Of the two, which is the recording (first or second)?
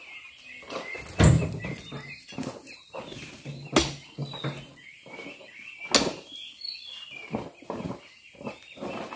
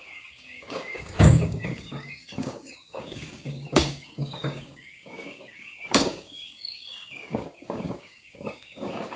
first